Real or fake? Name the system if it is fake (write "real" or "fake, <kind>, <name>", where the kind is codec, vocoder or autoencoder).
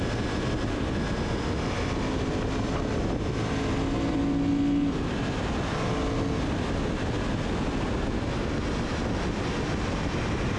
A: real